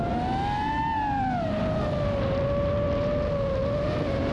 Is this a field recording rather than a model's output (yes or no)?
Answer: yes